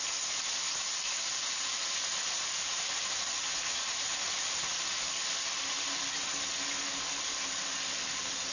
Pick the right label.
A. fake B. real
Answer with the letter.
B